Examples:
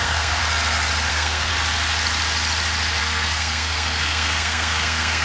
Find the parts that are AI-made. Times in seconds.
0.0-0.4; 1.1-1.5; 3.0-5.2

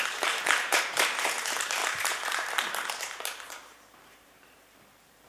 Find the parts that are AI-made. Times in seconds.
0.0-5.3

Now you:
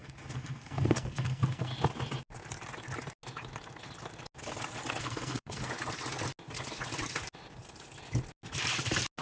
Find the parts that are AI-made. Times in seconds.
0.0-1.7; 5.0-5.7